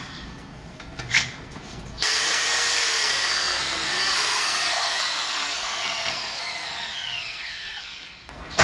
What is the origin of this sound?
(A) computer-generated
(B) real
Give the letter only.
A